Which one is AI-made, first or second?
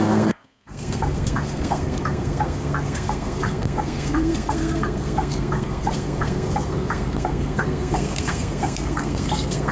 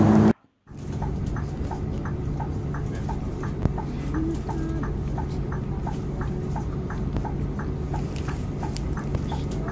first